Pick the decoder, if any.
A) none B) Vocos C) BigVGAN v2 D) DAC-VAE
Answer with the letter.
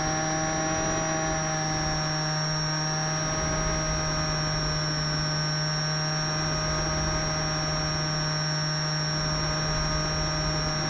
A